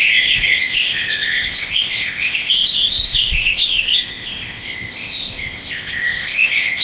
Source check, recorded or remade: remade